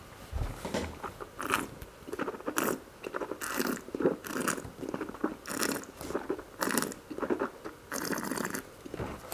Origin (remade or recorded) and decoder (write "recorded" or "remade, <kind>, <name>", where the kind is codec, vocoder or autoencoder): recorded